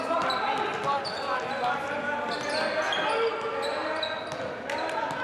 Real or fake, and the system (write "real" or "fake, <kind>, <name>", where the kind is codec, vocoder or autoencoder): real